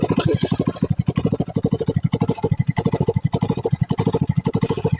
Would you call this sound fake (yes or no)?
no